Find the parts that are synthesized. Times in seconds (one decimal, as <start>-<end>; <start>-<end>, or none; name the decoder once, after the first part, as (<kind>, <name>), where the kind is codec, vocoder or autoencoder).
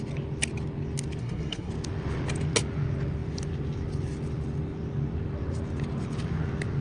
1.2-1.7 (codec, SNAC)